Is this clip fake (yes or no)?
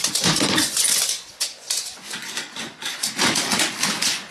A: yes